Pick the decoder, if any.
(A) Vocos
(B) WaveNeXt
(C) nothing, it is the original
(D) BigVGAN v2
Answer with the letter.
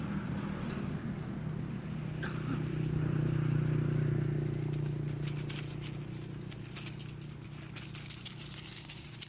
C